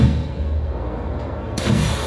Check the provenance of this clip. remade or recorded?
remade